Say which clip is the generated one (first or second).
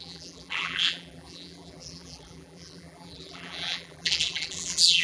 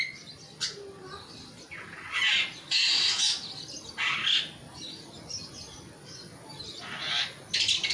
first